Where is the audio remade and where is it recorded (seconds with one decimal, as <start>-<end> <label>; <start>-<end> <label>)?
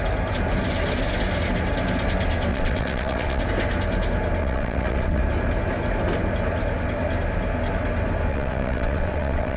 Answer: 0.0-2.5 recorded; 2.5-3.4 remade; 3.4-4.4 recorded; 4.4-5.2 remade; 5.2-8.3 recorded; 8.3-9.6 remade